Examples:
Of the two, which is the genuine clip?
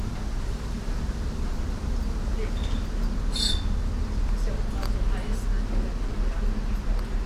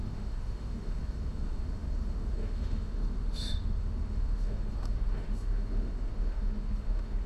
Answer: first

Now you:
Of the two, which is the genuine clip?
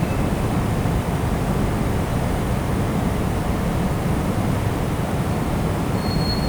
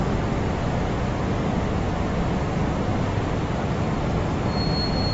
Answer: second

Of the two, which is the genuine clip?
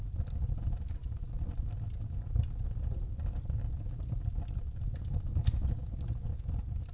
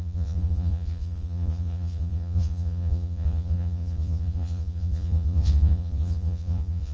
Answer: first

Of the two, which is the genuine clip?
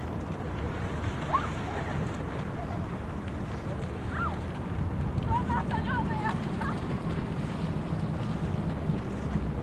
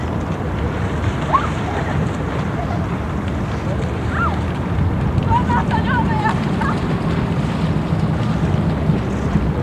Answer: first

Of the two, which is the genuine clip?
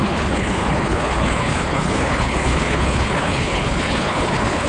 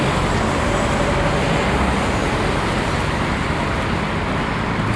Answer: second